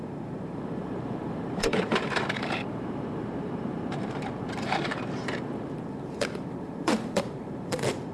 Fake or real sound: fake